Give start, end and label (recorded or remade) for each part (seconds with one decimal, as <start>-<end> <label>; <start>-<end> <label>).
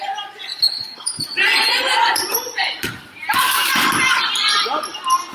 0.0-0.5 recorded; 0.5-3.7 remade; 3.7-5.3 recorded